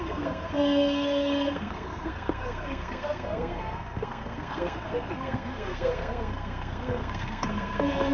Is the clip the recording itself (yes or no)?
no